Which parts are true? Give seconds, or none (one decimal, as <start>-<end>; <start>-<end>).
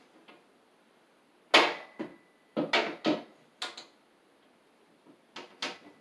0.0-6.0